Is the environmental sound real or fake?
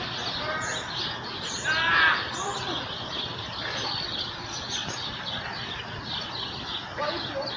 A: real